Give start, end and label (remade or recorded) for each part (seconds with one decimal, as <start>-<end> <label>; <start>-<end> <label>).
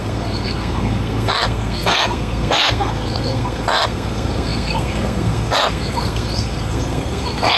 0.0-7.6 remade